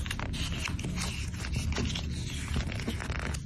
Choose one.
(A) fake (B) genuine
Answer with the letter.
B